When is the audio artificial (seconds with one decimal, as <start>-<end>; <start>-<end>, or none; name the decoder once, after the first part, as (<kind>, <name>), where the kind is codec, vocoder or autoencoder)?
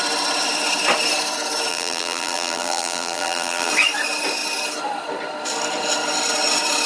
1.7-3.7 (vocoder, BigVGAN v2)